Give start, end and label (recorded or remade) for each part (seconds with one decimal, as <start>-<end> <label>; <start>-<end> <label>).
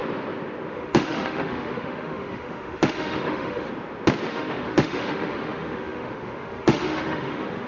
0.0-0.7 recorded; 0.7-3.7 remade; 3.7-4.3 recorded; 4.3-7.7 remade